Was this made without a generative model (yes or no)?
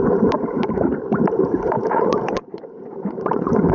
no